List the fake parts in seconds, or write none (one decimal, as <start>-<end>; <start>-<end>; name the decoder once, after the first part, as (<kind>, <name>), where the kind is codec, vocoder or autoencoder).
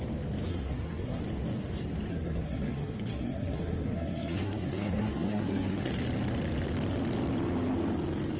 0.5-1.2 (codec, SNAC); 2.1-5.9